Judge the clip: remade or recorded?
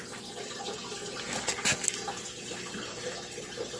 recorded